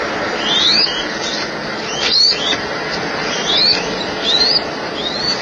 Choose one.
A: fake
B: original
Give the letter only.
B